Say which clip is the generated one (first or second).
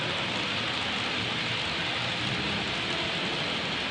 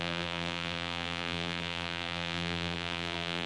second